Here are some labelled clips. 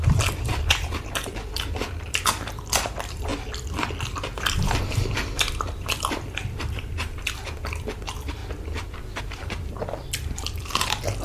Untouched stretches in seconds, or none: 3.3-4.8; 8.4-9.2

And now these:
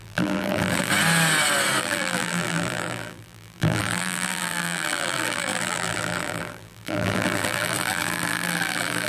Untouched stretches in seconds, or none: 0.9-1.8

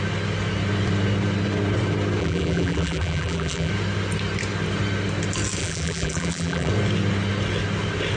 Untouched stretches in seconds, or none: 0.0-2.2; 3.7-5.6; 6.7-8.2

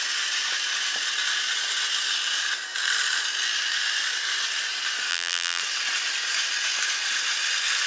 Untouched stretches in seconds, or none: 0.0-5.1; 5.6-7.9

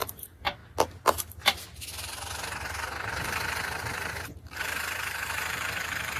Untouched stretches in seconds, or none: 0.6-3.1

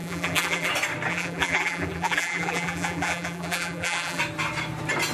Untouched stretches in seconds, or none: 0.7-1.1; 4.2-5.1

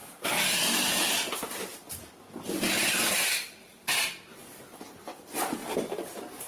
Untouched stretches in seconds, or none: 0.0-1.7; 4.6-5.6

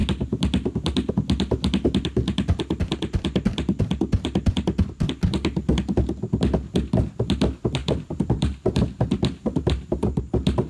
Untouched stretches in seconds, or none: 0.0-7.8; 10.2-10.7